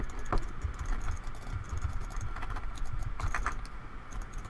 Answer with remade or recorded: recorded